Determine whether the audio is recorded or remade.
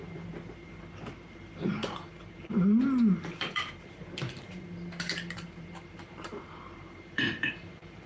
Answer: remade